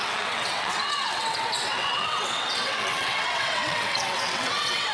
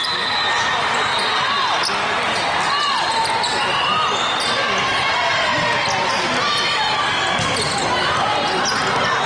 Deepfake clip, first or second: first